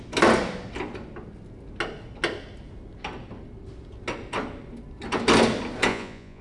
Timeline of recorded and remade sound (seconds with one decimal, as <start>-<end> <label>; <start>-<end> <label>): 0.0-5.9 recorded; 5.9-6.4 remade